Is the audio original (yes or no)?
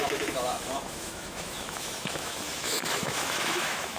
no